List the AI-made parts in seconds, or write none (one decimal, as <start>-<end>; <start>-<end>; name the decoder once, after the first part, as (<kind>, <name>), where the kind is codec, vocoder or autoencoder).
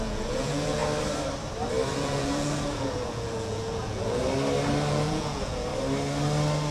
0.0-0.8 (vocoder, Vocos); 1.9-4.2; 4.9-5.7